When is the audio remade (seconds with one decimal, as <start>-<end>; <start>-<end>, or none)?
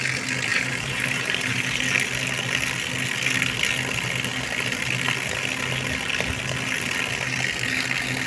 0.5-1.8